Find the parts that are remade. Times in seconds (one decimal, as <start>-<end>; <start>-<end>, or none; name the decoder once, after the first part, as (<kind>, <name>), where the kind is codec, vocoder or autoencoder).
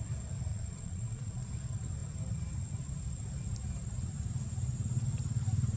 0.5-1.5 (vocoder, Vocos)